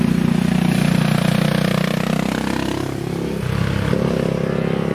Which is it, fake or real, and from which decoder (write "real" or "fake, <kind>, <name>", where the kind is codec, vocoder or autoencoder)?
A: real